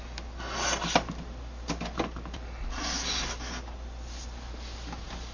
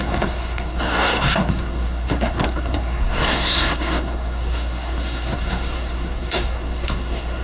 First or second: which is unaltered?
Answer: first